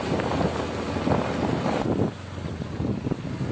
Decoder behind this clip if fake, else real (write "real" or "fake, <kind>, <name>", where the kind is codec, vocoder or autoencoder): real